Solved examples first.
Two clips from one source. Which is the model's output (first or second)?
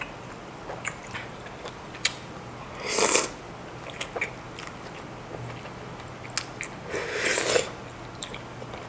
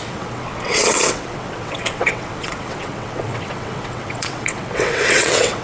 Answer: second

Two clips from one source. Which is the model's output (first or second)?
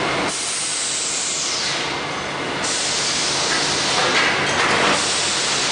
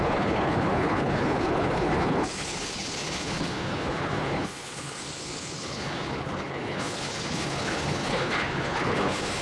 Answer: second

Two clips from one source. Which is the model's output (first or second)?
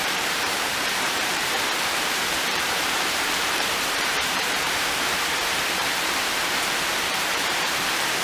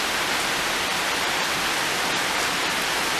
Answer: first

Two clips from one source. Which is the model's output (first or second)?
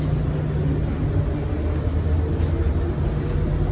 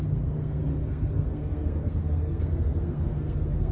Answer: second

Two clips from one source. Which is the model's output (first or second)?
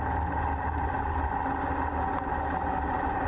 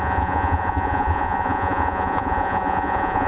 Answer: second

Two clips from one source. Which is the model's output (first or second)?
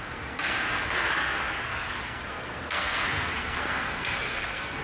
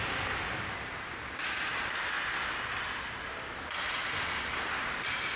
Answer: first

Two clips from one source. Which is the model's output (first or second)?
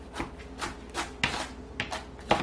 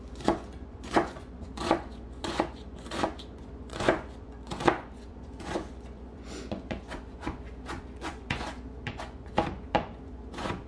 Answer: second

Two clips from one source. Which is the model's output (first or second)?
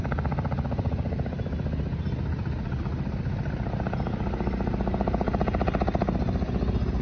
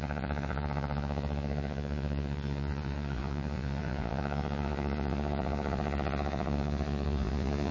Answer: second